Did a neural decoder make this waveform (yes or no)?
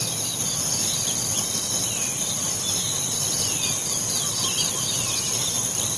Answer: no